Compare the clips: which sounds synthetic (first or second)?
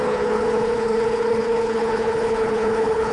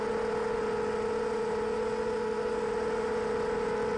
first